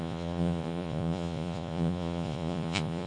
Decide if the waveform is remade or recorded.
remade